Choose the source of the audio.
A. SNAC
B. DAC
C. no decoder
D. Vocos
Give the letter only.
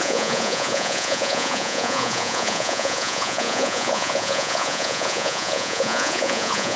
D